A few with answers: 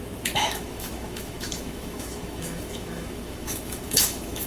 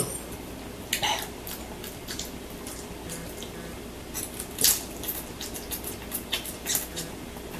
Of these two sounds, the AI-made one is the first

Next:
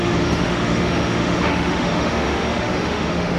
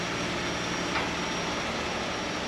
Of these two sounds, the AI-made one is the first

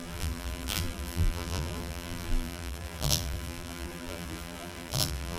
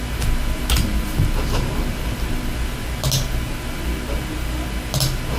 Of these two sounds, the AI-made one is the first